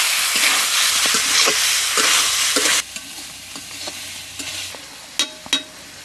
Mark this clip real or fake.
real